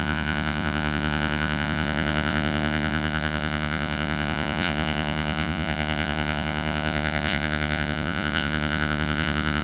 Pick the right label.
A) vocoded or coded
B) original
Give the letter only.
A